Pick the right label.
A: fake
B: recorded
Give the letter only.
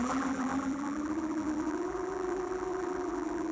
A